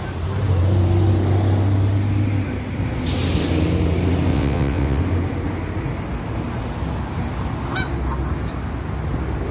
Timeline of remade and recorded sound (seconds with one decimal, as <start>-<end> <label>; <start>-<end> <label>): 0.0-4.3 recorded; 4.3-5.0 remade; 5.0-9.5 recorded